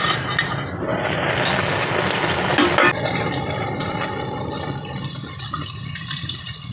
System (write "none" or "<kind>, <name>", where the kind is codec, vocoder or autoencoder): none